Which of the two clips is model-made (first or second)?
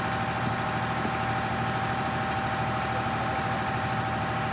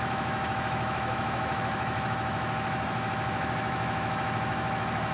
second